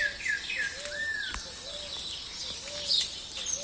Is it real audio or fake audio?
real